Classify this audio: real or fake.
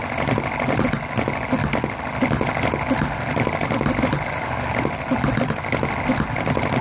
real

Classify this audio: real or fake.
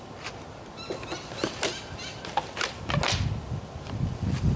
real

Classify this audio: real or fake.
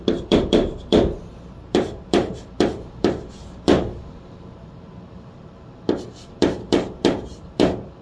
fake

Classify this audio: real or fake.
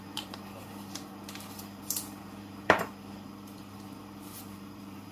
fake